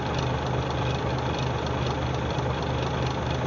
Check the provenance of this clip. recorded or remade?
recorded